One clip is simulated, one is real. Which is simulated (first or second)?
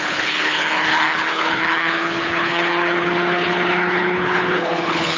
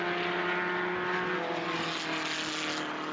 first